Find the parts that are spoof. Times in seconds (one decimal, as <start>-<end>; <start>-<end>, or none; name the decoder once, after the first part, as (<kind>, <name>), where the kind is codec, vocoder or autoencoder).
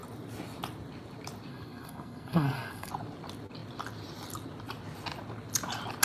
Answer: 1.5-2.9 (codec, SNAC)